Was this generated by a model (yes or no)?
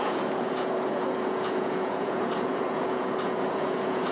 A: yes